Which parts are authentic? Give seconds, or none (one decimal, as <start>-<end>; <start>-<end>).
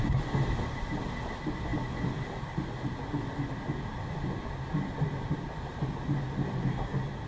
0.0-7.3